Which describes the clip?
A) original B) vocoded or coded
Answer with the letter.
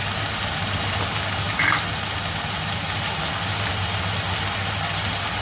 A